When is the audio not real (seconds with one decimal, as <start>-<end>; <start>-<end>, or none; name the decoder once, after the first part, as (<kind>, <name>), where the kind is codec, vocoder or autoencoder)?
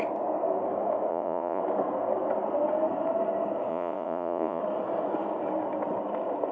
1.1-1.6 (vocoder, Vocos); 3.7-4.6